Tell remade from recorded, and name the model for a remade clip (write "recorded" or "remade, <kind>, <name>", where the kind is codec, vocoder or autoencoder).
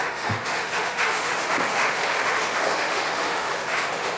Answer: remade, autoencoder, DAC-VAE